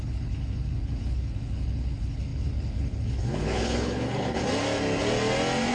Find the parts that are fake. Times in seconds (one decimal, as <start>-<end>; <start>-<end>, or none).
0.0-4.4